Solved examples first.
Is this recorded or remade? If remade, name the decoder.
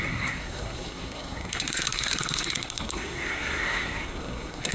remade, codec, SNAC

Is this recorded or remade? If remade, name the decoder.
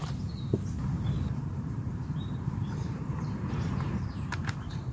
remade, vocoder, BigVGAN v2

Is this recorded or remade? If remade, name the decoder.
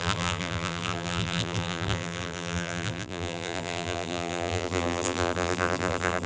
remade, vocoder, BigVGAN v2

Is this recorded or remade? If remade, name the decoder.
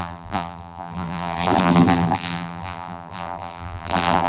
remade, vocoder, BigVGAN v2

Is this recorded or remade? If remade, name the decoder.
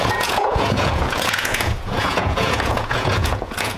remade, vocoder, Vocos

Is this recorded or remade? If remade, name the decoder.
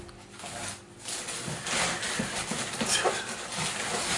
recorded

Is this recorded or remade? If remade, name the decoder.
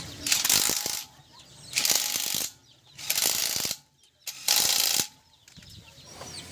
recorded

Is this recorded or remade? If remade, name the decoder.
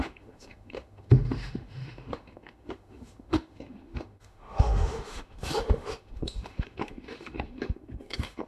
remade, autoencoder, DAC-VAE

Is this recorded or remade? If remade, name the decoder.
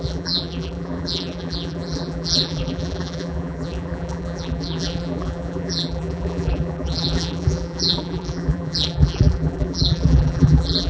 remade, vocoder, BigVGAN v2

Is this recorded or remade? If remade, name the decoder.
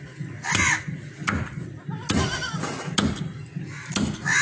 recorded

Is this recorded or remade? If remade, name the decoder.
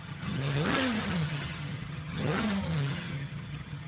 remade, vocoder, HiFi-GAN